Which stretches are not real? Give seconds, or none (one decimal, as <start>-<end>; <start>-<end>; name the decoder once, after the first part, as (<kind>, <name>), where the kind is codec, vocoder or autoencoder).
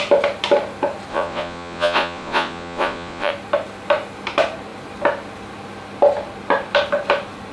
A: 1.1-3.3 (vocoder, Vocos)